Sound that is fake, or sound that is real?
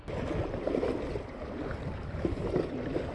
real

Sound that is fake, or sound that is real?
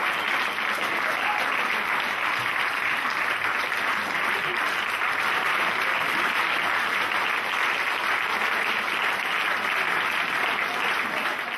real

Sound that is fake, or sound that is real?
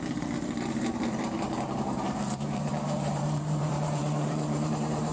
fake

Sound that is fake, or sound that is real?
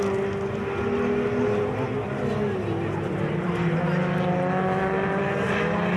real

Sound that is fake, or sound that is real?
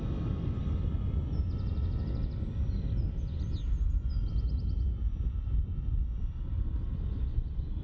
real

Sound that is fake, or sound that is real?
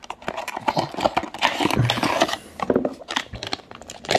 real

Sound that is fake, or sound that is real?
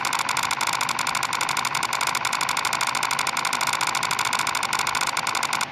real